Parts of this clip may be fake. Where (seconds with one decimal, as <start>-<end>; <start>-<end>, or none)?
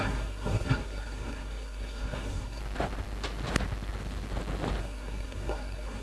0.0-2.6; 4.8-6.0